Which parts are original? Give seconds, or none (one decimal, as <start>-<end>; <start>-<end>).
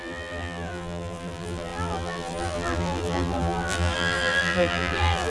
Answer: none